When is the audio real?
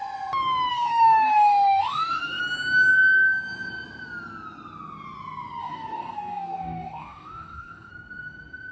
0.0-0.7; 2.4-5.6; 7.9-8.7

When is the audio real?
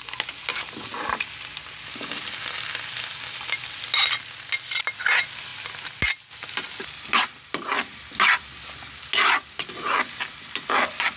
0.0-11.2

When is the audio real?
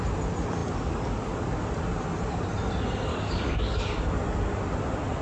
0.0-3.1; 4.1-5.2